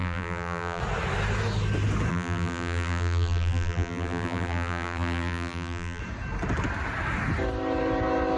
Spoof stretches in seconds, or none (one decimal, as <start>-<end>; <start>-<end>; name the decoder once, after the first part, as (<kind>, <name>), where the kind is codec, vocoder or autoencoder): 0.0-0.8 (vocoder, BigVGAN v2); 2.1-6.0